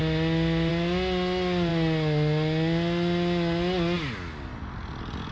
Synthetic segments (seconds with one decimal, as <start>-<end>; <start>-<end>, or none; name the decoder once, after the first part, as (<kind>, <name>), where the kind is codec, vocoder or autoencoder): none